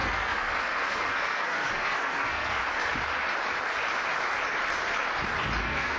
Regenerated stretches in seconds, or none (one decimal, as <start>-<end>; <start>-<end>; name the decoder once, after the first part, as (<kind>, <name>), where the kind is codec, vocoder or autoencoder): 0.0-2.6 (codec, SNAC); 5.6-6.0